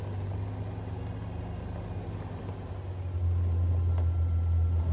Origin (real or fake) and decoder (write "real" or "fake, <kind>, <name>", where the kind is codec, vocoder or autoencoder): real